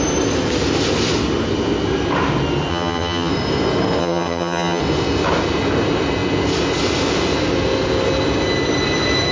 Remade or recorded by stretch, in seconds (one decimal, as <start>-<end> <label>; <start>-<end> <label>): 0.0-2.7 recorded; 2.7-3.3 remade; 3.3-4.0 recorded; 4.0-4.8 remade; 4.8-9.3 recorded